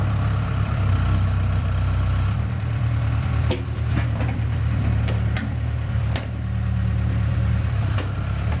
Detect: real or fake fake